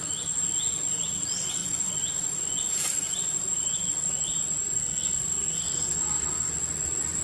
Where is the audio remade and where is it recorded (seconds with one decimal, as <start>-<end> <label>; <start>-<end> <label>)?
0.0-4.8 recorded; 4.8-6.5 remade; 6.5-7.2 recorded

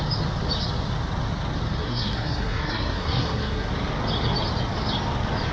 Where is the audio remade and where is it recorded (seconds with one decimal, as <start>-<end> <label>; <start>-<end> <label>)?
0.0-1.8 recorded; 1.8-3.7 remade; 3.7-5.5 recorded

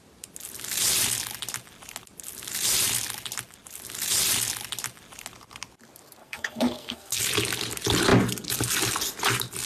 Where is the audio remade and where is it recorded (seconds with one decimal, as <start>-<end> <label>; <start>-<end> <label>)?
0.0-6.2 recorded; 6.2-7.2 remade; 7.2-9.7 recorded

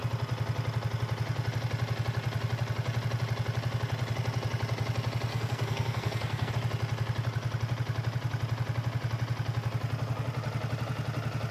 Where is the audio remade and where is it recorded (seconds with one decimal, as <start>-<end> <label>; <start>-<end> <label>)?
0.0-5.3 recorded; 5.3-6.5 remade; 6.5-11.5 recorded

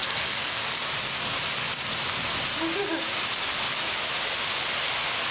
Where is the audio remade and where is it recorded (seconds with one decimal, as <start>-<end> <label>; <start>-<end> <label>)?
0.0-0.6 remade; 0.6-5.3 recorded

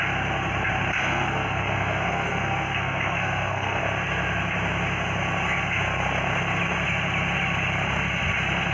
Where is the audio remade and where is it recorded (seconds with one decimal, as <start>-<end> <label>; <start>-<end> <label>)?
0.0-1.0 recorded; 1.0-3.8 remade; 3.8-8.7 recorded

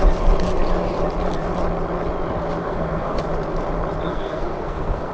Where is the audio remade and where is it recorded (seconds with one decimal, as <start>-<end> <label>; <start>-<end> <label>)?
0.0-2.6 recorded; 2.6-3.2 remade; 3.2-4.1 recorded; 4.1-5.1 remade

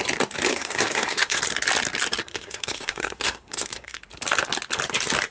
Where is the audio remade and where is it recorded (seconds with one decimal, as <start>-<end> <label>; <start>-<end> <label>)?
0.0-0.5 recorded; 0.5-1.4 remade; 1.4-2.2 recorded; 2.2-4.0 remade; 4.0-5.3 recorded